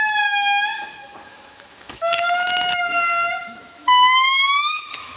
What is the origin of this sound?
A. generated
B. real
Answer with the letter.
A